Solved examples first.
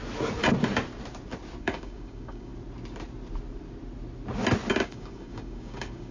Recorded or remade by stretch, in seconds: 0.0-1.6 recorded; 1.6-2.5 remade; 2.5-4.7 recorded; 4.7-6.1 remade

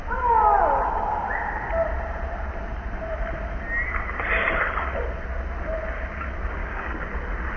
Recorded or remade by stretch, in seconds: 0.0-6.6 recorded; 6.6-7.1 remade; 7.1-7.6 recorded